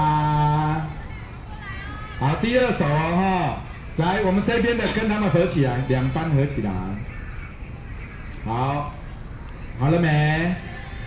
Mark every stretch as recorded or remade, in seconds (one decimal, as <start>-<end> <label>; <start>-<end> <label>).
0.0-11.1 recorded